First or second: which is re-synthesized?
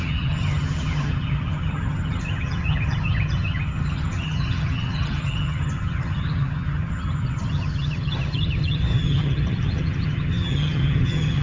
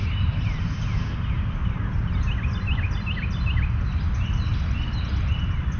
first